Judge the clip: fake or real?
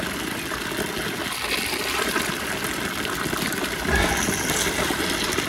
real